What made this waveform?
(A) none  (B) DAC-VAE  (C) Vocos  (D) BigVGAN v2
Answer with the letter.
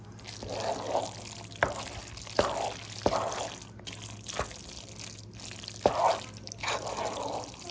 A